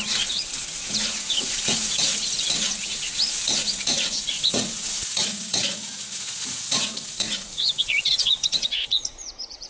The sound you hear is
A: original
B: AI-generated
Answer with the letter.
B